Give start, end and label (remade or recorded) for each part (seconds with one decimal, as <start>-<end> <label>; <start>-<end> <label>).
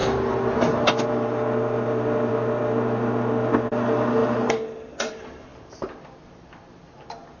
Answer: 0.0-2.3 remade; 2.3-4.2 recorded; 4.2-5.1 remade; 5.1-5.5 recorded; 5.5-6.6 remade; 6.6-7.4 recorded